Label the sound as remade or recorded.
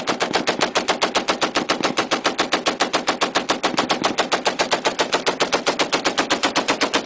recorded